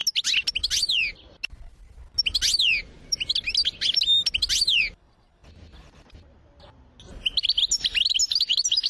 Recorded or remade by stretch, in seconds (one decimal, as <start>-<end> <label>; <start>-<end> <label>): 0.0-8.9 recorded